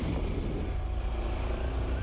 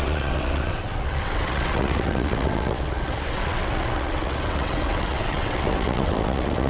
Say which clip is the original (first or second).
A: first